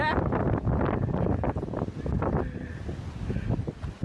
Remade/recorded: recorded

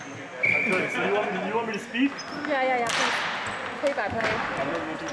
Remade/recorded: recorded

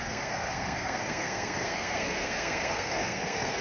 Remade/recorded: remade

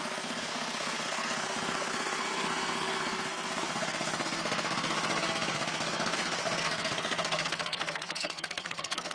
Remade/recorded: remade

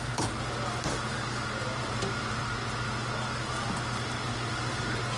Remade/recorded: recorded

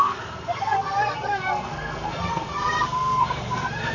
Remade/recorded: remade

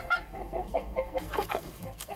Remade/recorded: remade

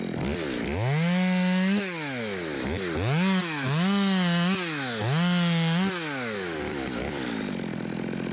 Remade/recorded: recorded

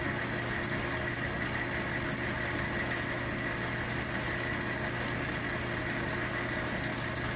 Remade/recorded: recorded